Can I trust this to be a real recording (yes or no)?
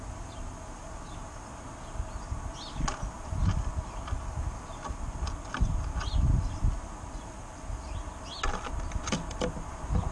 yes